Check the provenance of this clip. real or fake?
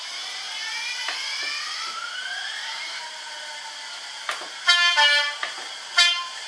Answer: fake